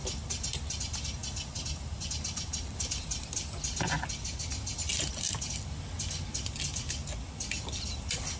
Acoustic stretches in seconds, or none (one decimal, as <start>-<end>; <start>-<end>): 0.0-8.4